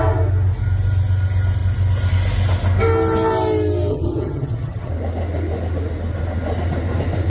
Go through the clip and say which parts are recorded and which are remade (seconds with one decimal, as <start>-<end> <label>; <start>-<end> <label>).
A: 0.0-3.9 recorded; 3.9-4.9 remade; 4.9-7.3 recorded